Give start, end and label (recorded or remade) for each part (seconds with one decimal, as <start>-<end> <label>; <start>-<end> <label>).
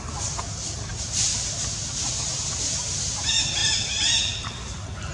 0.0-0.9 recorded; 0.9-2.7 remade; 2.7-5.1 recorded